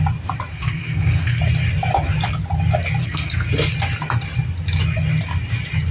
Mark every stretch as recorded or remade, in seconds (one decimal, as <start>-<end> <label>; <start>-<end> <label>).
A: 0.0-0.5 recorded; 0.5-1.4 remade; 1.4-3.0 recorded; 3.0-3.5 remade; 3.5-5.9 recorded